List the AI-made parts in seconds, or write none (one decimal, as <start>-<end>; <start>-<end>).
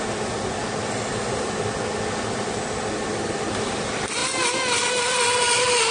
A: none